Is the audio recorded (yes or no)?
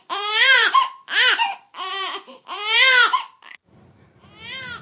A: no